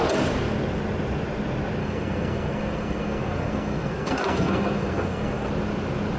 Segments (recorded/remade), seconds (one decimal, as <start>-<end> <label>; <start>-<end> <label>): 0.0-1.8 recorded; 1.8-5.5 remade; 5.5-6.2 recorded